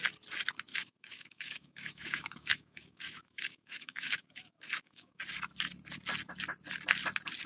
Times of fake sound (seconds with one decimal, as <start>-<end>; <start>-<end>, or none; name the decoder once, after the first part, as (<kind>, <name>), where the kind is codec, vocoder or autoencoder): 0.7-5.2 (autoencoder, DAC-VAE)